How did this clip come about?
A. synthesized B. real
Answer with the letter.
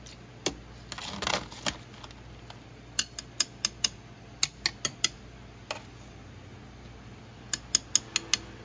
B